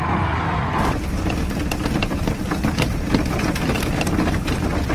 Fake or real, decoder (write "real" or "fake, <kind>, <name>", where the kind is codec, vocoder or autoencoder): real